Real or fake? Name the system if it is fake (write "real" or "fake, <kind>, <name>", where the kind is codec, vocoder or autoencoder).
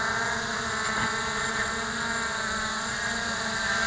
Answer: fake, vocoder, BigVGAN v2